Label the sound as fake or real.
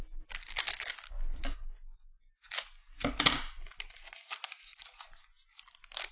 real